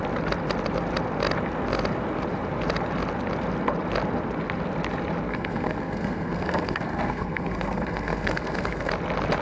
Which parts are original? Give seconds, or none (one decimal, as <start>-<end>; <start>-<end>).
0.0-5.3; 8.9-9.4